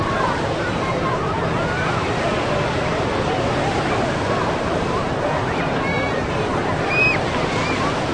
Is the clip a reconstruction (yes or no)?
no